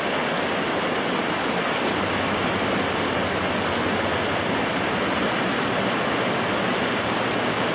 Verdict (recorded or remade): recorded